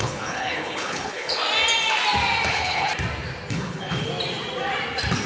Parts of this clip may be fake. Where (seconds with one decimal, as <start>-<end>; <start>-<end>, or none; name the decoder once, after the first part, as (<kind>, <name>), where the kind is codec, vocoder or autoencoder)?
0.0-1.4 (codec, HILCodec); 2.5-2.9; 3.5-4.1